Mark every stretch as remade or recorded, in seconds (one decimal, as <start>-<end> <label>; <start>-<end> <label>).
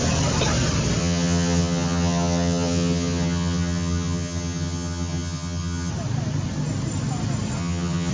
0.0-1.0 recorded; 1.0-5.9 remade; 5.9-7.6 recorded; 7.6-8.1 remade